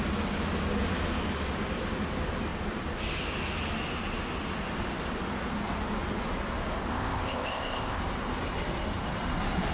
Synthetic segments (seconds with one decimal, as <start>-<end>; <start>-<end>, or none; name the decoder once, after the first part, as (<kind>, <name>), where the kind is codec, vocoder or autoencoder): 6.9-8.0 (codec, ZipCodec)

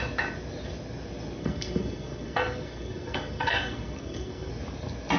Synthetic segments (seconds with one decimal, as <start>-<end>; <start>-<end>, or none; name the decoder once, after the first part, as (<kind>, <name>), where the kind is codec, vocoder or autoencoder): 1.4-4.5 (codec, SNAC)

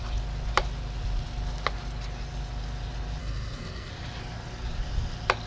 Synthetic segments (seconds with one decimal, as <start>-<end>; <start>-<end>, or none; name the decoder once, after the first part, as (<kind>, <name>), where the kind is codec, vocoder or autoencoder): 3.2-3.9 (codec, SNAC)

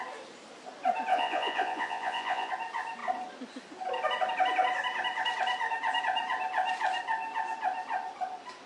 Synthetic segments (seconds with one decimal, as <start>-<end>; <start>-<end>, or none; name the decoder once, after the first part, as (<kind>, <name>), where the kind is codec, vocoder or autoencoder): 1.1-2.5 (vocoder, Vocos)

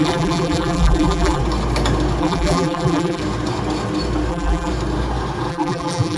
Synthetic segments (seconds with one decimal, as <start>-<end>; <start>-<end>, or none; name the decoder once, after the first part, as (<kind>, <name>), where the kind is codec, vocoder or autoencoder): 0.0-1.4 (vocoder, BigVGAN v2); 2.2-3.2; 4.3-4.7; 5.5-6.2

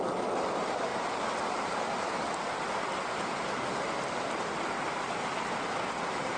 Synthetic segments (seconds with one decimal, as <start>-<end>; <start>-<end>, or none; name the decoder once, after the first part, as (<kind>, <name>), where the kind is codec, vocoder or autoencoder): none

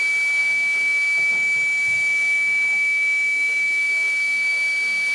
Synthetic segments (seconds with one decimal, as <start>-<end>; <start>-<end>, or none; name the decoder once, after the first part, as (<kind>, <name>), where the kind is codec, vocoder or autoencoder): 0.4-1.3 (autoencoder, DAC-VAE); 1.8-4.6